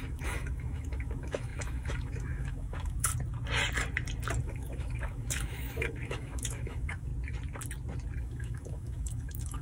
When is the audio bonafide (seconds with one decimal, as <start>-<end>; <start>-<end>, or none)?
3.1-4.4; 7.1-8.2